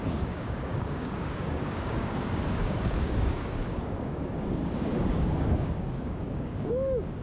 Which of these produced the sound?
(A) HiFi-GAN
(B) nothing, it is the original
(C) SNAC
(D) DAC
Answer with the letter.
D